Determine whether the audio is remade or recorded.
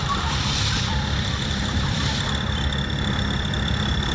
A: remade